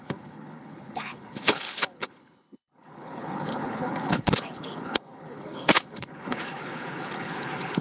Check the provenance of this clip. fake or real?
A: fake